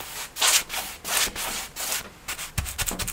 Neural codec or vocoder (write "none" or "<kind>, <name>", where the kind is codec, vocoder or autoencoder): none